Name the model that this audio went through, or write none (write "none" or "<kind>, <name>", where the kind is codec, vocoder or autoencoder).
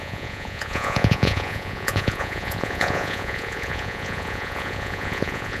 vocoder, Vocos